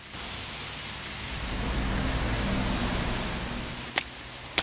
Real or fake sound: real